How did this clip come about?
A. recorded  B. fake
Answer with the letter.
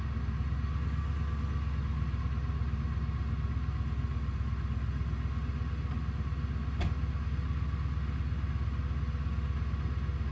A